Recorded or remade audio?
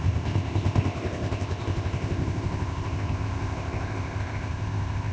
remade